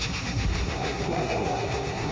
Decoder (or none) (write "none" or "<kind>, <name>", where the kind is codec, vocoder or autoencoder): codec, SNAC